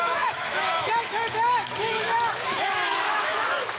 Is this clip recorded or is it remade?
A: remade